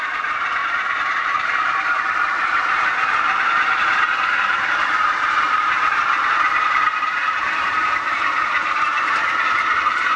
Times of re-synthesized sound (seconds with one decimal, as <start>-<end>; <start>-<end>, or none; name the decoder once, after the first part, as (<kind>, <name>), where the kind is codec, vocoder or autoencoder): 0.0-10.2 (vocoder, BigVGAN v2)